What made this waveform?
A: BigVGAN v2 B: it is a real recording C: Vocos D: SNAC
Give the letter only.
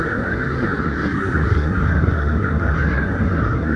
D